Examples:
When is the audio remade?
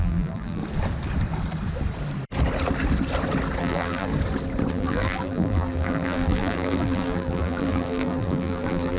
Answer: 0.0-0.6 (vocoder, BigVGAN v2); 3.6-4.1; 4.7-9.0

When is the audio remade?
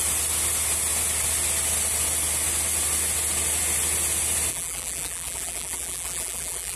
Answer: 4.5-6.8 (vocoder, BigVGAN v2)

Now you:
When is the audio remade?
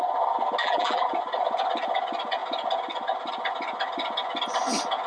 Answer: 0.6-1.1 (vocoder, BigVGAN v2)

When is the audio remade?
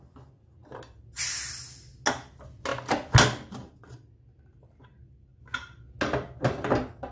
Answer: none